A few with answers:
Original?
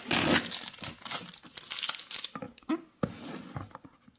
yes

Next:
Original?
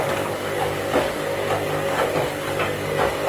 no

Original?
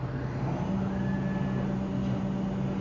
yes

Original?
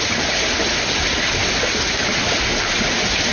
yes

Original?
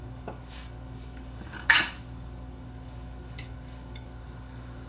no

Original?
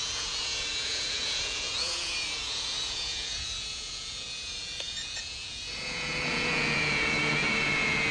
no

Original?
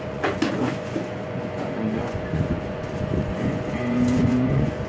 no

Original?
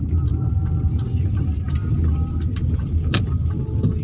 yes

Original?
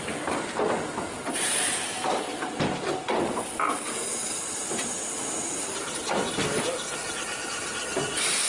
no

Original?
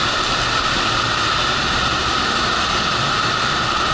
yes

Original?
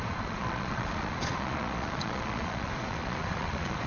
no